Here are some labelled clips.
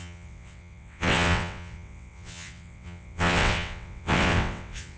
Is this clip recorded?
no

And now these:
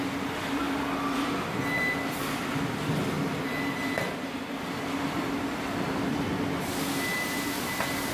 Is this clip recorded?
yes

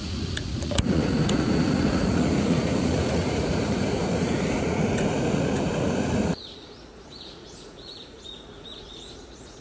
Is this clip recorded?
no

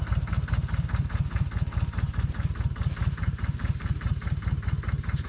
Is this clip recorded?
yes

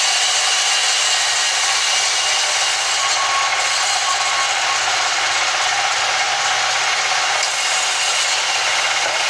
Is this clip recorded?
yes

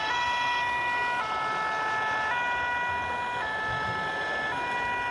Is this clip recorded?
yes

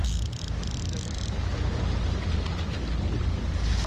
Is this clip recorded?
yes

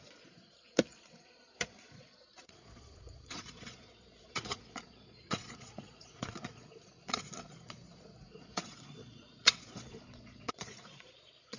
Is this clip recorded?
no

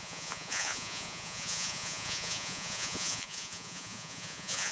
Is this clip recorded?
no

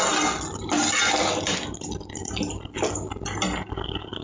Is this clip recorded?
yes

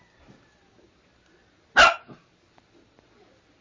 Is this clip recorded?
yes